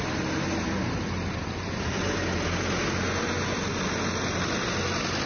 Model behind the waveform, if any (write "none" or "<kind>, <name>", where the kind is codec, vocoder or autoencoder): none